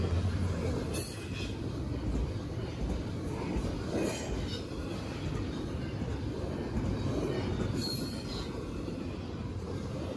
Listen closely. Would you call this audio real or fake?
real